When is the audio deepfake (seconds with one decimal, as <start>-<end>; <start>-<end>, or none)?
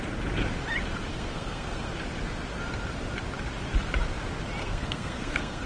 1.1-1.9; 4.6-5.7